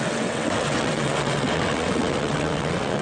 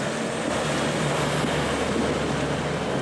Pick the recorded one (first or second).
second